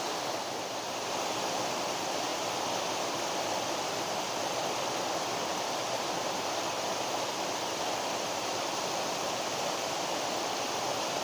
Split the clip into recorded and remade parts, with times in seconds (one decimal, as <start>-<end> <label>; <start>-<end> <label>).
0.0-2.3 remade; 2.3-3.3 recorded; 3.3-5.5 remade; 5.5-6.2 recorded; 6.2-11.2 remade